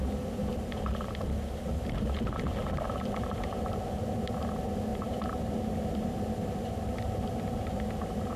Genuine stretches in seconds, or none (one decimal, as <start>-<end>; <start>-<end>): 4.1-8.4